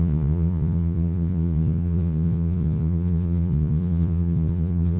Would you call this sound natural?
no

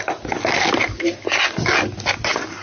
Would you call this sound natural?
yes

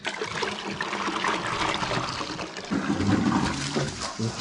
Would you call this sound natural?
yes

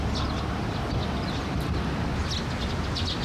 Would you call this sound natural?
yes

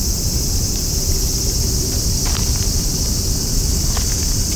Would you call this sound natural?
yes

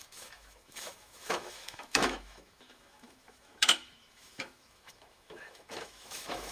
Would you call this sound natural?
no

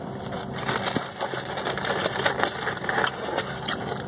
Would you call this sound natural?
yes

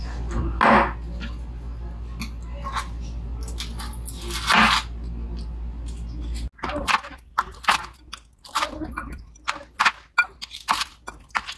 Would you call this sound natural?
yes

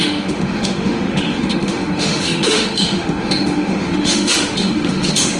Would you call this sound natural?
no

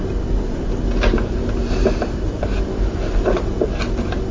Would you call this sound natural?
yes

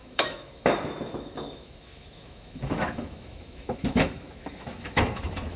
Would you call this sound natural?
no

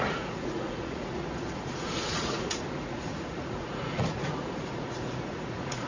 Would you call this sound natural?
no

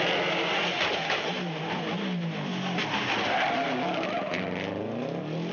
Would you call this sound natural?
yes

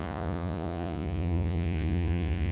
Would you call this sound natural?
no